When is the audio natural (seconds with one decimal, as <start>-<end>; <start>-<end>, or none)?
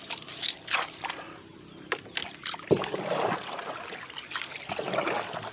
0.0-5.5